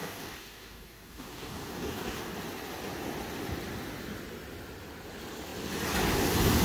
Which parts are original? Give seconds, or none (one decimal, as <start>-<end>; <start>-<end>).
2.3-6.6